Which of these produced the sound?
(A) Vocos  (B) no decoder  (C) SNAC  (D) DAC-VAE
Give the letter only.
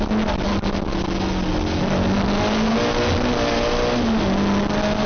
B